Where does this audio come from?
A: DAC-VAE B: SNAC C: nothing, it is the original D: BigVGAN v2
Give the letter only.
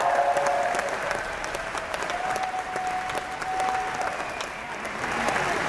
C